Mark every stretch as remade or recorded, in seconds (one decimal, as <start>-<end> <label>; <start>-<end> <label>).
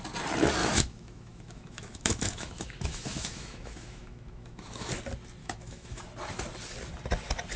0.0-0.6 recorded; 0.6-4.9 remade; 4.9-5.4 recorded; 5.4-6.0 remade; 6.0-7.6 recorded